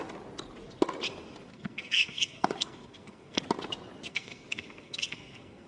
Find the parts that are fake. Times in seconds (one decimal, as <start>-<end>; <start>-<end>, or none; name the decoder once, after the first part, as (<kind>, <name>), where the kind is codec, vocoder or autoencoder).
1.5-3.4 (codec, SNAC); 4.1-5.7